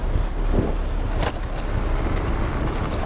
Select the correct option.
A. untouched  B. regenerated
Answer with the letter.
A